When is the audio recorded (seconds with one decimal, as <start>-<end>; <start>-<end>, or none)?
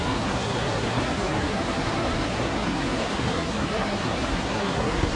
none